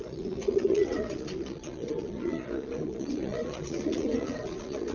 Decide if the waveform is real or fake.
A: fake